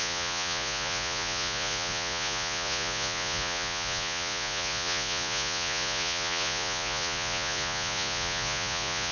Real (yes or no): no